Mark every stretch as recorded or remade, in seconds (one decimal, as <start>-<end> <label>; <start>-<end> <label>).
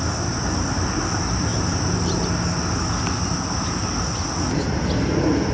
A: 0.0-5.5 recorded